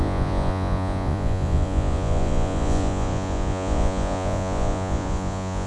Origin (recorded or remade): remade